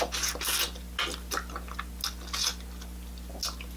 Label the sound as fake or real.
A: real